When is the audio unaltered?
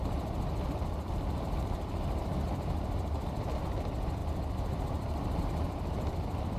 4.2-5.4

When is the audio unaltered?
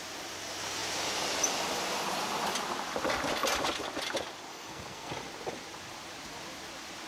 0.0-4.5; 5.1-7.1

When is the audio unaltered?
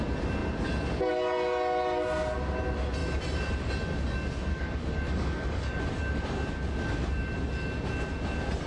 0.0-4.5; 5.8-8.7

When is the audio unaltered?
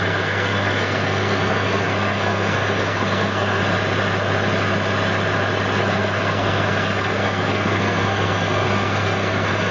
3.6-5.8